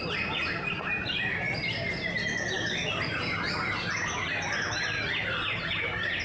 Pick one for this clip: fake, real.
real